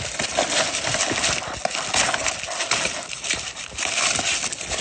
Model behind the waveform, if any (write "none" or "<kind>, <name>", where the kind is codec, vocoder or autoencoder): none